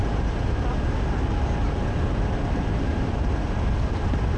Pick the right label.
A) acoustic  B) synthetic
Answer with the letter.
A